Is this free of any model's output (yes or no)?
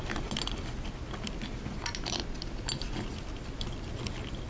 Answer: yes